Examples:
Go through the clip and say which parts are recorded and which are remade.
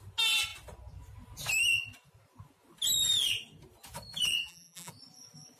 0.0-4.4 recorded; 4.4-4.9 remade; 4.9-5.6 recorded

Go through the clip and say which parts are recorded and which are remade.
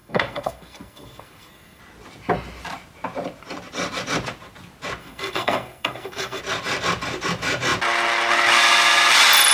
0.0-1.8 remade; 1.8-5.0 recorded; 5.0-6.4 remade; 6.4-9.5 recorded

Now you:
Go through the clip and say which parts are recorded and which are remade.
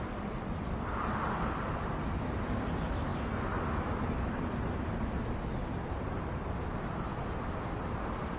0.0-8.4 recorded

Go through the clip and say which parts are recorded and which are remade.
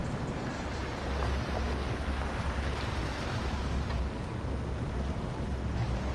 0.0-6.1 recorded